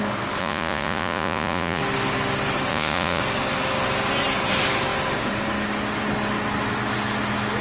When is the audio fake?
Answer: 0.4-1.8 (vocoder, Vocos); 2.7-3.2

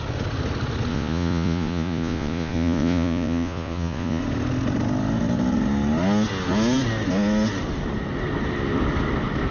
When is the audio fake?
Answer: 0.9-4.2 (vocoder, Vocos)

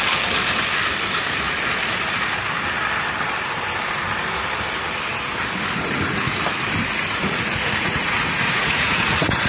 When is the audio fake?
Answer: 7.0-9.5 (vocoder, Vocos)

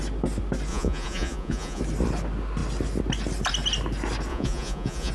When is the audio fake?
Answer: 0.7-1.8 (vocoder, Vocos); 4.3-5.1